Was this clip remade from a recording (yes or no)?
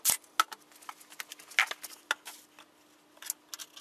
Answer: no